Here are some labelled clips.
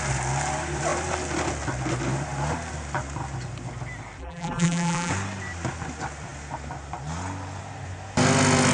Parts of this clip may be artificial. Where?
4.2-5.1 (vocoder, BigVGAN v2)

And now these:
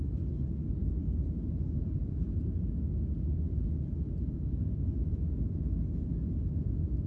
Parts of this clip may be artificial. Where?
none

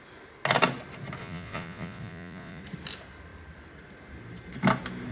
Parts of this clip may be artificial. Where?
1.2-2.6 (vocoder, Vocos)

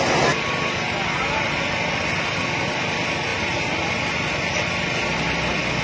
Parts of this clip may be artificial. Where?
none

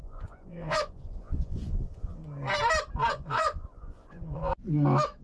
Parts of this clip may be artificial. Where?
0.0-2.2 (vocoder, Vocos); 3.1-4.4

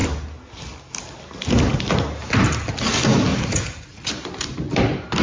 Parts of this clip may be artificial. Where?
3.3-4.1 (vocoder, Vocos)